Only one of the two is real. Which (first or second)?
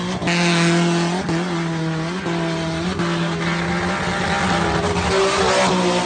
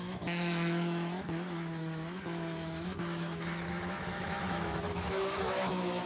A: first